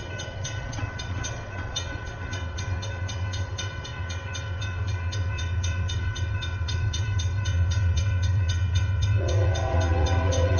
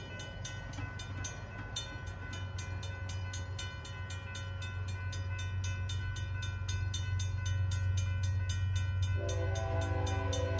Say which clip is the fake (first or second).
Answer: first